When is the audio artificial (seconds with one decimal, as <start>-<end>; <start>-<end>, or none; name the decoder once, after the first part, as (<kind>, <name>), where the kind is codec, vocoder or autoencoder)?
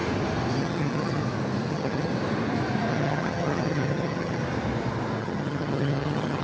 0.6-1.2 (vocoder, HiFi-GAN); 1.7-2.1; 2.9-4.4; 5.2-6.4